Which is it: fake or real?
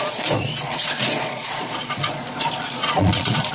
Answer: fake